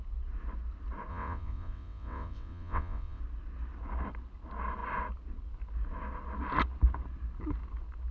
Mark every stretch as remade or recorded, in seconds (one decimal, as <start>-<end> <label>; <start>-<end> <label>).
0.0-1.1 recorded; 1.1-3.2 remade; 3.2-8.1 recorded